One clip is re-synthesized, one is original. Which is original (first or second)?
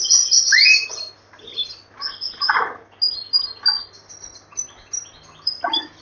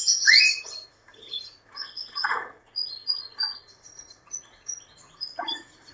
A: first